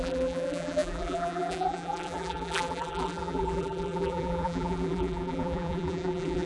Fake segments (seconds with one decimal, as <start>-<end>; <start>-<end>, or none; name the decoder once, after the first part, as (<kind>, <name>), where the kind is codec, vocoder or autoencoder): 0.0-6.5 (vocoder, BigVGAN v2)